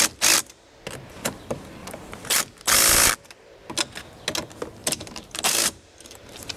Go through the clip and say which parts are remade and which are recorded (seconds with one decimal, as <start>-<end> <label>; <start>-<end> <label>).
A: 0.0-1.8 recorded; 1.8-2.4 remade; 2.4-4.8 recorded; 4.8-6.6 remade